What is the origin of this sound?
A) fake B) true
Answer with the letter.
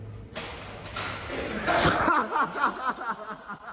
B